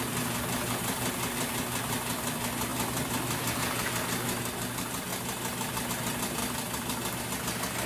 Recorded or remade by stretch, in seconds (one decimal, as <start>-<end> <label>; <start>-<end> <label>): 0.0-6.4 recorded; 6.4-7.2 remade; 7.2-7.9 recorded